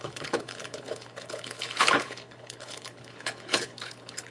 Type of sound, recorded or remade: remade